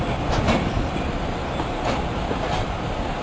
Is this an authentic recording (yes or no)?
yes